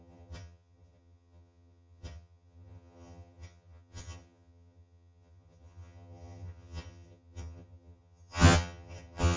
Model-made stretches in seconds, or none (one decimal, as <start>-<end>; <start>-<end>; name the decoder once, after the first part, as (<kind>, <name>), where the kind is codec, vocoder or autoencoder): 0.0-9.4 (vocoder, HiFi-GAN)